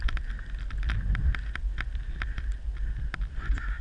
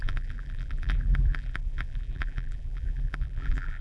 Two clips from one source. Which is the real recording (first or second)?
first